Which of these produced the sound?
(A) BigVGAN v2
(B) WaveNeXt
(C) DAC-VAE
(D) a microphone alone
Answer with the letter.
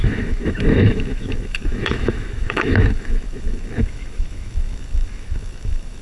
C